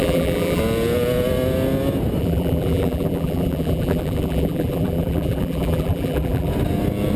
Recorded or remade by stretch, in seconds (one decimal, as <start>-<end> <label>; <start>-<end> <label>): 0.0-0.6 remade; 0.6-2.2 recorded; 2.2-6.5 remade; 6.5-7.2 recorded